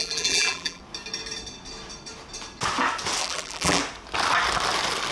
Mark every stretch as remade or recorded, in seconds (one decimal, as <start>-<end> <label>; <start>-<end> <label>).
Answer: 0.0-0.8 remade; 0.8-3.2 recorded; 3.2-3.8 remade; 3.8-5.1 recorded